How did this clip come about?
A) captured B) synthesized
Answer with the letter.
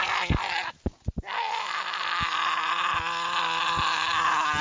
A